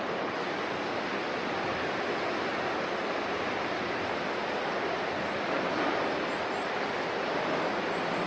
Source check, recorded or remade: recorded